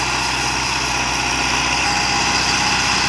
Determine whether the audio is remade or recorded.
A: recorded